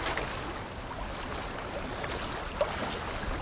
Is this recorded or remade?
recorded